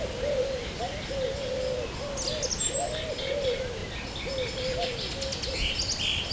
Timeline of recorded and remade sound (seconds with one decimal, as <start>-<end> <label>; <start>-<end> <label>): 0.0-6.3 recorded